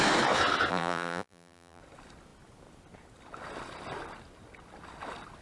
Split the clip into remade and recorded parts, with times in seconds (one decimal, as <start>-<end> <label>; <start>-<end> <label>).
0.0-0.7 recorded; 0.7-1.8 remade; 1.8-5.4 recorded